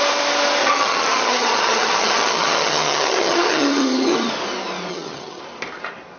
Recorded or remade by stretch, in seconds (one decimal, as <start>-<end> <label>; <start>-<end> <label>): 0.0-0.6 recorded; 0.6-4.3 remade; 4.3-4.9 recorded; 4.9-5.4 remade; 5.4-6.2 recorded